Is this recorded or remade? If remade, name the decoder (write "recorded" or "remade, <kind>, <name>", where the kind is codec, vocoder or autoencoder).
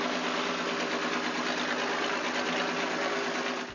recorded